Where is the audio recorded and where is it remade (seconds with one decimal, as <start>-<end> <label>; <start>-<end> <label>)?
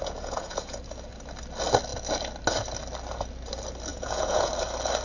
0.0-0.8 remade; 0.8-3.9 recorded; 3.9-4.5 remade; 4.5-5.0 recorded